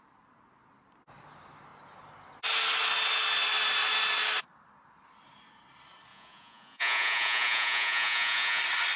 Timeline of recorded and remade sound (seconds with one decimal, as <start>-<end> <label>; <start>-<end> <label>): 0.0-6.1 recorded; 6.1-8.6 remade; 8.6-9.0 recorded